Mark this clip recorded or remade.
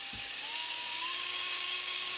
remade